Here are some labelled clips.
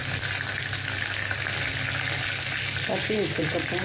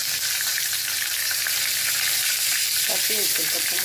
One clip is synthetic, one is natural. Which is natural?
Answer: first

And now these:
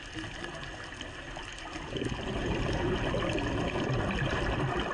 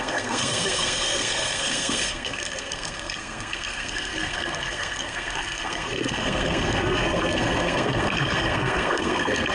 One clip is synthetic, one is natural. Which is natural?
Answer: first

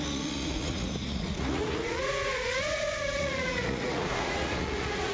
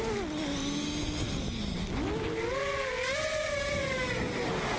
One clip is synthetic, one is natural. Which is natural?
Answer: second